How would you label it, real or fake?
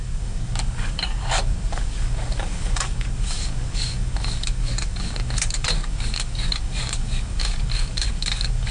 fake